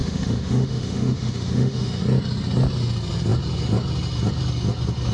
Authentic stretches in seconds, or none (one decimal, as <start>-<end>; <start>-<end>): 2.0-5.1